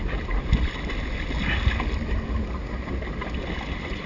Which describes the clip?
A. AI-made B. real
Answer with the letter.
B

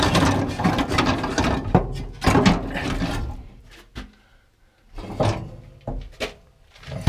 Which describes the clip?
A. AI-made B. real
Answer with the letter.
B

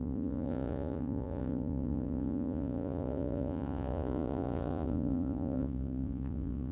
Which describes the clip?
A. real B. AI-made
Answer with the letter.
B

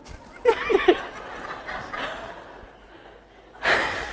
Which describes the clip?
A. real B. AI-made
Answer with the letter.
A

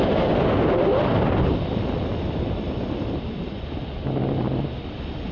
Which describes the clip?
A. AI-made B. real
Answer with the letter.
B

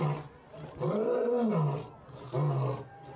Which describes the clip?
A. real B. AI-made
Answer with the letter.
A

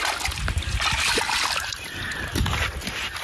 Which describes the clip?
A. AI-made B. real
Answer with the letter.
B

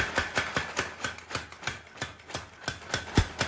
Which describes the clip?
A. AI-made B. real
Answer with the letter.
B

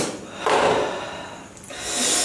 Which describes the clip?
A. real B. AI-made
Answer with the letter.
A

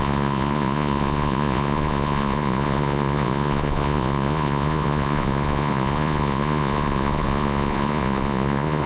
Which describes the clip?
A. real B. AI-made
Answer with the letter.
B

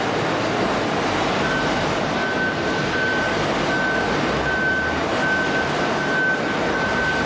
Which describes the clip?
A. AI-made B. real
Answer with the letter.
B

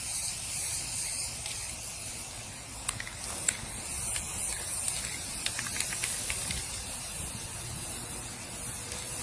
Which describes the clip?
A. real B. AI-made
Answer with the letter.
A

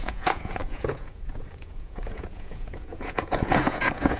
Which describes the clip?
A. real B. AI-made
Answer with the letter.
B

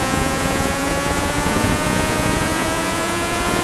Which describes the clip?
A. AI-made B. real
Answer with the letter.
A